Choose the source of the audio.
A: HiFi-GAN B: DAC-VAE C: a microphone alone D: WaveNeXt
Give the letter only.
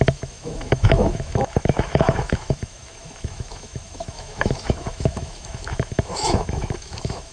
B